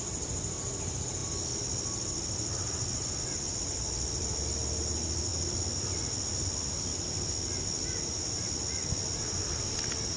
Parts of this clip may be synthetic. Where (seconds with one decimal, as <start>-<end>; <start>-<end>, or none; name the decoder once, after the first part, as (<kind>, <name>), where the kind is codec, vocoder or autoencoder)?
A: none